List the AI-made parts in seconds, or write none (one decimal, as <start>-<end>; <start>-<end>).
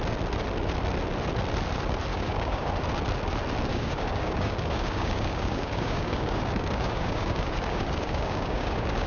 2.1-2.7; 3.7-9.1